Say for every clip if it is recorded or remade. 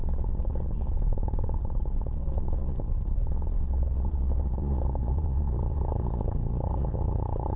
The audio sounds remade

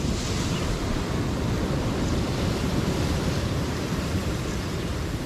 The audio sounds recorded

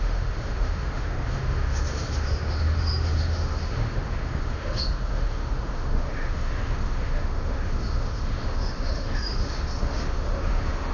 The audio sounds remade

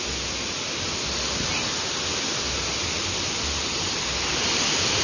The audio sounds recorded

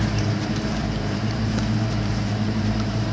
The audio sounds remade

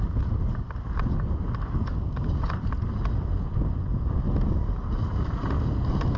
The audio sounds recorded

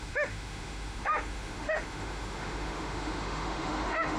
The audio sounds remade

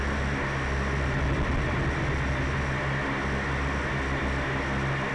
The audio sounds recorded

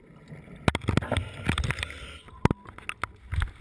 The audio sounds recorded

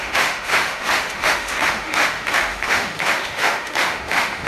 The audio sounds remade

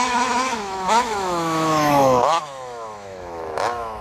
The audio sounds remade